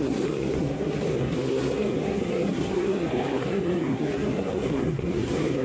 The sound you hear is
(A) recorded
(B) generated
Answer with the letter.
B